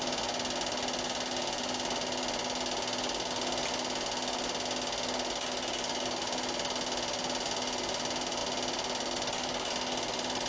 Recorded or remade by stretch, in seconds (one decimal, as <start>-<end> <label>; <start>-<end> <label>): 0.0-10.5 recorded